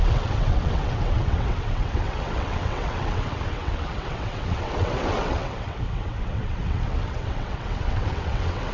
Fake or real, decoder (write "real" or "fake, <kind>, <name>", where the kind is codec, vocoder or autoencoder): fake, vocoder, WaveNeXt